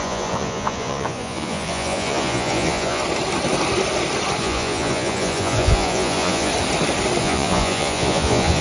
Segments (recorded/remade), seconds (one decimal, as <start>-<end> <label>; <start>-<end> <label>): 0.0-3.0 remade; 3.0-4.4 recorded; 4.4-6.5 remade; 6.5-7.2 recorded; 7.2-8.6 remade